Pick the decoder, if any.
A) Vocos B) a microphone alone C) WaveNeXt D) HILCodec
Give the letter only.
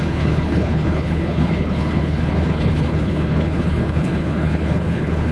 D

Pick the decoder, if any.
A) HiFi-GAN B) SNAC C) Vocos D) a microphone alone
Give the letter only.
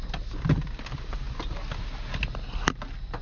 D